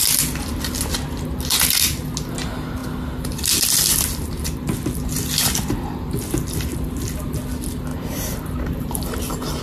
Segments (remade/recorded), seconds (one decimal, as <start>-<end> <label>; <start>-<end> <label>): 0.0-7.9 recorded; 7.9-9.2 remade; 9.2-9.6 recorded